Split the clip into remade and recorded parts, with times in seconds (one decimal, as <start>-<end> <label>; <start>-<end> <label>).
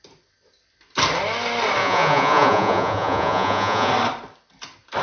0.0-1.8 recorded; 1.8-3.9 remade; 3.9-5.0 recorded